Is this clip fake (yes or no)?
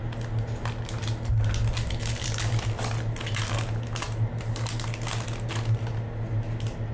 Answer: no